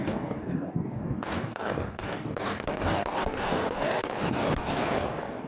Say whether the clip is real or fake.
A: fake